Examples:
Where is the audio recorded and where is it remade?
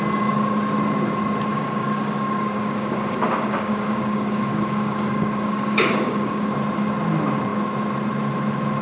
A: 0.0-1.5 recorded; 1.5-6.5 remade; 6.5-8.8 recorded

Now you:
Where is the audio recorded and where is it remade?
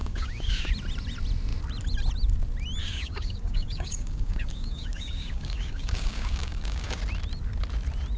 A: 0.0-0.7 remade; 0.7-2.8 recorded; 2.8-7.0 remade; 7.0-8.2 recorded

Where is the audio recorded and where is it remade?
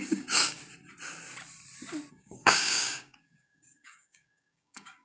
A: 0.0-0.6 remade; 0.6-2.1 recorded; 2.1-5.0 remade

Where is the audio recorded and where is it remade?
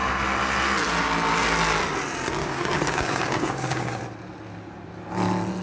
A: 0.0-2.4 recorded; 2.4-4.0 remade; 4.0-5.6 recorded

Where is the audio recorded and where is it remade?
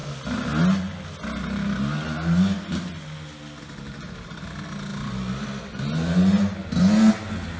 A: 0.0-7.6 recorded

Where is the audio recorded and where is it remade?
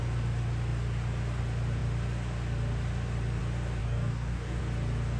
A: 0.0-3.8 recorded; 3.8-4.6 remade; 4.6-5.2 recorded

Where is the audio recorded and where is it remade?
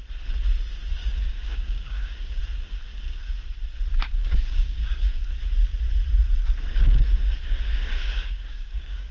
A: 0.0-1.0 recorded; 1.0-2.4 remade; 2.4-3.9 recorded; 3.9-5.3 remade; 5.3-6.7 recorded; 6.7-9.1 remade